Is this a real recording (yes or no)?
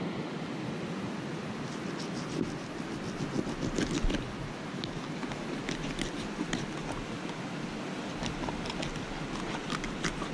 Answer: yes